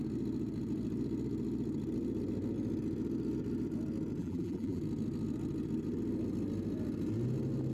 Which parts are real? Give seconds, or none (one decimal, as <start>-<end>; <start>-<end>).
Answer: 0.0-4.2; 4.8-7.7